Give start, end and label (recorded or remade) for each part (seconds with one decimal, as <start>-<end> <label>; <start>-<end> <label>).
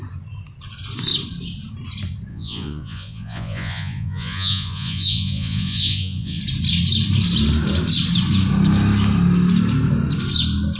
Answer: 0.0-2.3 recorded; 2.3-6.4 remade; 6.4-10.8 recorded